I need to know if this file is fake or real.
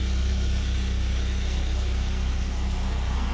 fake